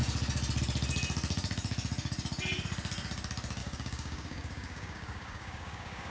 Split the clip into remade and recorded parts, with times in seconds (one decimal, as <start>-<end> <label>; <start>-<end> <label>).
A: 0.0-3.6 recorded; 3.6-6.1 remade